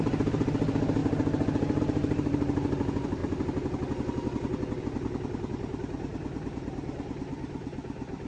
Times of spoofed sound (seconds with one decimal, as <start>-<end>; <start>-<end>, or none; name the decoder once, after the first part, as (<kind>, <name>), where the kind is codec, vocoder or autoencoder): 0.0-1.0 (vocoder, BigVGAN v2); 1.8-3.2; 4.8-8.3